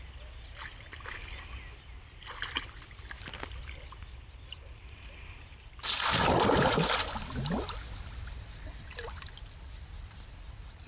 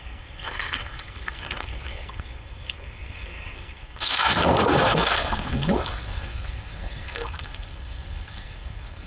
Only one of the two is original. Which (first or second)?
first